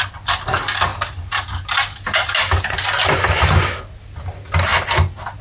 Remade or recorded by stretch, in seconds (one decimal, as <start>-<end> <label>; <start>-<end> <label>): 0.0-5.4 recorded